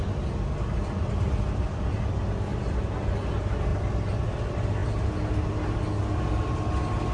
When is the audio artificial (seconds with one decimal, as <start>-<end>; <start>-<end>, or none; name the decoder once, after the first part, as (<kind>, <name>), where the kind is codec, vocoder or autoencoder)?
none